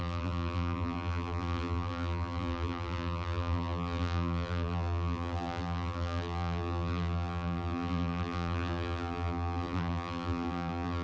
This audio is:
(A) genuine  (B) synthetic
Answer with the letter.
B